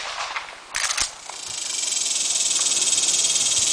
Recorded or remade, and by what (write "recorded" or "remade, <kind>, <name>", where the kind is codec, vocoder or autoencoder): recorded